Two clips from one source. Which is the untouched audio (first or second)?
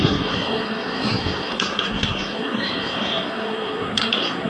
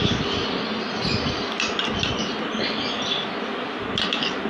second